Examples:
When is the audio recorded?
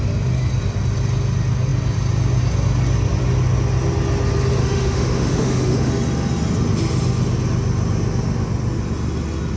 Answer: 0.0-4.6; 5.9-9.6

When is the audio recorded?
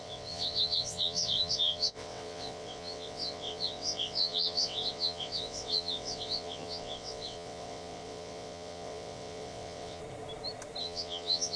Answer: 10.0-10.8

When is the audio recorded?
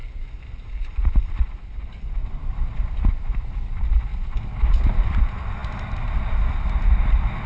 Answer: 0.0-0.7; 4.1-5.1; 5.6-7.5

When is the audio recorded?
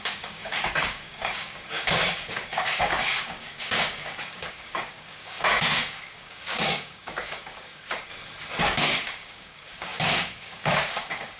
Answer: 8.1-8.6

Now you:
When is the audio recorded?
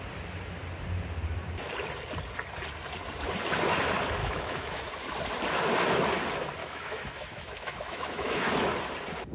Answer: 0.0-4.2; 4.8-6.6; 8.5-9.3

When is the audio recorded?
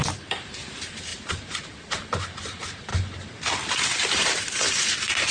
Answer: 2.9-3.7